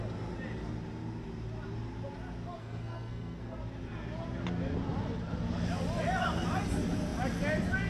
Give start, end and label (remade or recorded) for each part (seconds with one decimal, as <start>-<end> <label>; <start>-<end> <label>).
0.0-2.6 recorded; 2.6-3.6 remade; 3.6-7.9 recorded